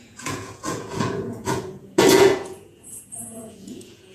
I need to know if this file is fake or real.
fake